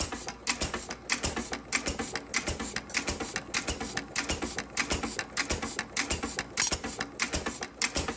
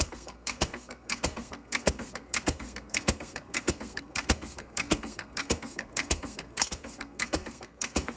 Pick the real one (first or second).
first